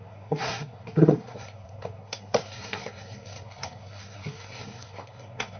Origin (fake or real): fake